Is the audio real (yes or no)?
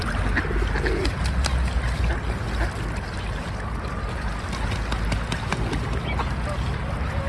yes